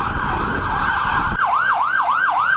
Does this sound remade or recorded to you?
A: recorded